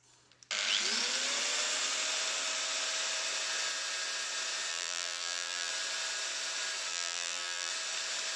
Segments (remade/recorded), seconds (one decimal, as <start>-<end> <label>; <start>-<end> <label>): 0.0-4.7 recorded; 4.7-5.7 remade; 5.7-6.9 recorded; 6.9-7.7 remade; 7.7-8.4 recorded